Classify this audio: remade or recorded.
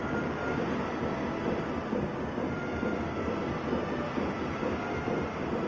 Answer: recorded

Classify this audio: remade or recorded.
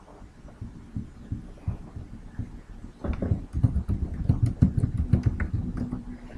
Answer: recorded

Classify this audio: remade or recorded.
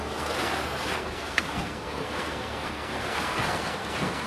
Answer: remade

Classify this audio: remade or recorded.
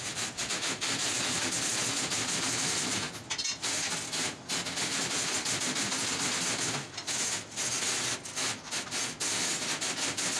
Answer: recorded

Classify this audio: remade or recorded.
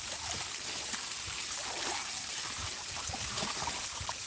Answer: remade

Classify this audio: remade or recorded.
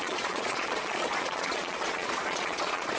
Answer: remade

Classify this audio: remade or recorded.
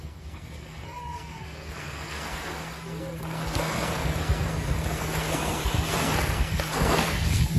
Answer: remade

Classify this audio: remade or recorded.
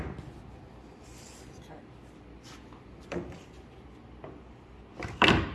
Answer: recorded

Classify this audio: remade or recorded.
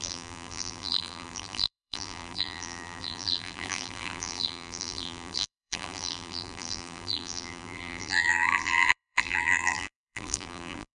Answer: remade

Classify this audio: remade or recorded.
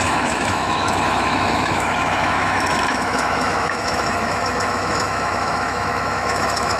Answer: remade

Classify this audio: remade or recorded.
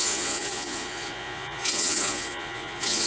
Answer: remade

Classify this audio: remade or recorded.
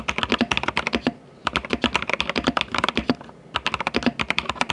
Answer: recorded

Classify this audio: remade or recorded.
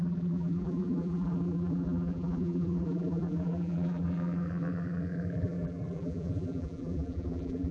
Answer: remade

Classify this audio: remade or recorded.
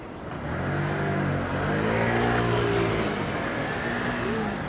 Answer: recorded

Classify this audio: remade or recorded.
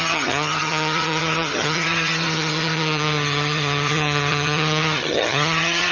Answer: remade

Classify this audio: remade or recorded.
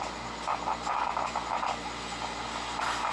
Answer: recorded